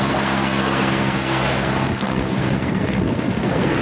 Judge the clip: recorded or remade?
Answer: remade